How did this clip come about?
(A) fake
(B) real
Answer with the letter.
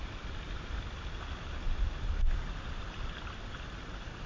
B